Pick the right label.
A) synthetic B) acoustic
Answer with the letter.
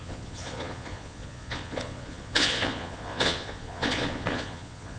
A